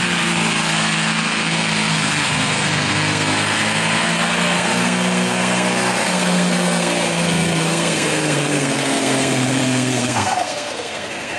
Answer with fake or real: fake